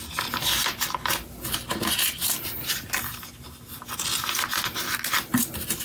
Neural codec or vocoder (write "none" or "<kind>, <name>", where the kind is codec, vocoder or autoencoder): none